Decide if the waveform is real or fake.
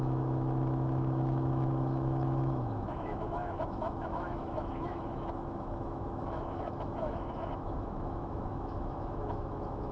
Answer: fake